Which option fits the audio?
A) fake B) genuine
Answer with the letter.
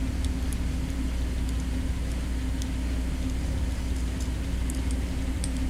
B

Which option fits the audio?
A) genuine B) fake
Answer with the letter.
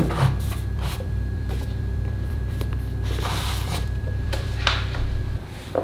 B